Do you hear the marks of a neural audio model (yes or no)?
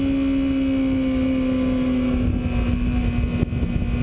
no